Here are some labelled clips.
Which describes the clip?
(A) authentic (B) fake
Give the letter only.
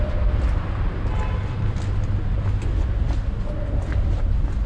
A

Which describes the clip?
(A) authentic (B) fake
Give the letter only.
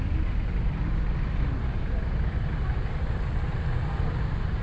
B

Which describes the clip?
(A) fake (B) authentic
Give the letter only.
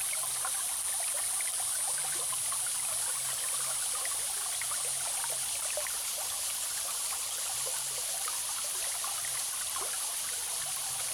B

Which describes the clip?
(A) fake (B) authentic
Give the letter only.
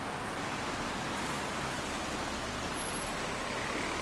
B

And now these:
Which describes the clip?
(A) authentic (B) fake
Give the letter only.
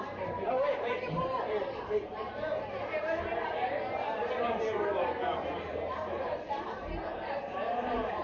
B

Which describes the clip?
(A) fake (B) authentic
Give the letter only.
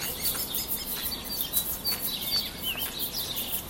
B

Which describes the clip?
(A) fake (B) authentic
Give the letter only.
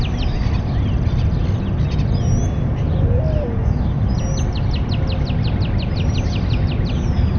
B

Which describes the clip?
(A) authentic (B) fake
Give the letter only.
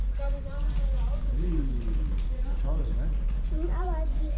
B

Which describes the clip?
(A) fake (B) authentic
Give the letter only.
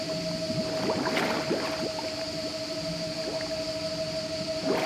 B